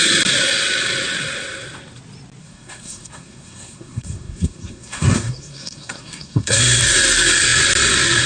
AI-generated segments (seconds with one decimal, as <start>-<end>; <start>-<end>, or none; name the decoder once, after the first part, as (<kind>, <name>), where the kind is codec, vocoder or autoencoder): 2.4-6.6 (codec, SNAC)